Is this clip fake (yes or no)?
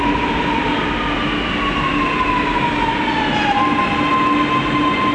no